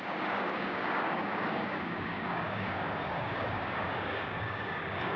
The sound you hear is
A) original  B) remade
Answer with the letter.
B